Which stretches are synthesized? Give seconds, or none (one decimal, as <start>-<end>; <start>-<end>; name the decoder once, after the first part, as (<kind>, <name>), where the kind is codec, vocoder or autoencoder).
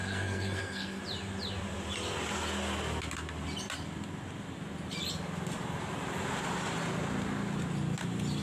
0.0-1.0 (codec, SNAC)